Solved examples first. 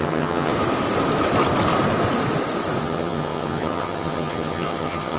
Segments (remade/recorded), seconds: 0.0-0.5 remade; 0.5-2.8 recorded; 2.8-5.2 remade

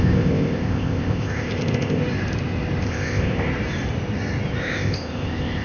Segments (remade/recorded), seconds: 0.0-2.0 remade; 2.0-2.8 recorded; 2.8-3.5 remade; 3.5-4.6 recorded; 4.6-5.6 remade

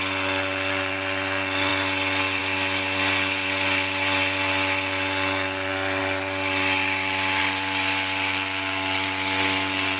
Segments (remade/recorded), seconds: 0.0-10.0 recorded

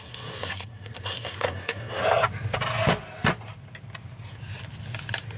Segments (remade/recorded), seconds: 0.0-2.0 remade; 2.0-5.4 recorded

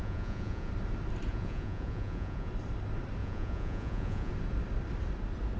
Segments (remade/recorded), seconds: 0.0-0.7 remade; 0.7-1.3 recorded; 1.3-2.5 remade; 2.5-3.2 recorded; 3.2-4.3 remade; 4.3-5.6 recorded

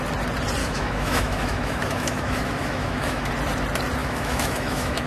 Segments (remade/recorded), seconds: 0.0-0.6 recorded; 0.6-3.3 remade; 3.3-4.0 recorded; 4.0-5.1 remade